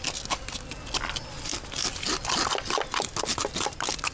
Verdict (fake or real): real